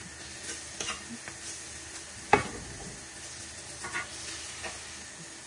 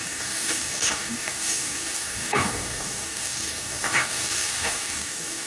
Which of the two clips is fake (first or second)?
second